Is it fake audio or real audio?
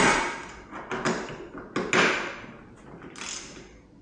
real